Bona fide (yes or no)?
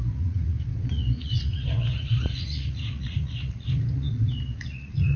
no